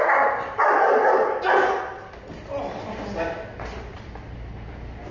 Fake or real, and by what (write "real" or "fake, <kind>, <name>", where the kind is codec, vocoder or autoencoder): real